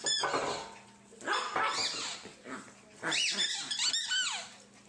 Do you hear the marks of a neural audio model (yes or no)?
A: no